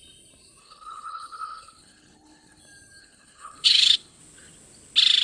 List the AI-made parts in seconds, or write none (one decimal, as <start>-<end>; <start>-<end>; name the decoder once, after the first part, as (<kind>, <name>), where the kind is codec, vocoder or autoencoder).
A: 0.6-2.6 (codec, HILCodec); 3.0-4.2